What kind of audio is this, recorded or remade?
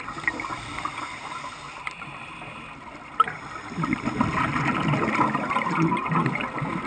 recorded